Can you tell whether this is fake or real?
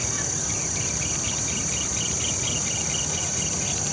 real